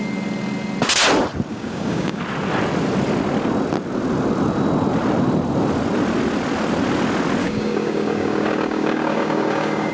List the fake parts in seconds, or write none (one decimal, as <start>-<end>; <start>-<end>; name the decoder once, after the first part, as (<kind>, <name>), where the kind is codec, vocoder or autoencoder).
1.5-2.2 (codec, DAC); 7.4-9.9